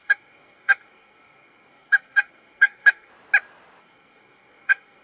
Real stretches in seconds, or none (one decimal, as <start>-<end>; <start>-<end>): 3.1-3.8